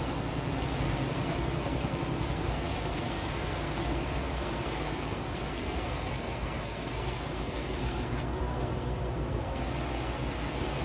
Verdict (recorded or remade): remade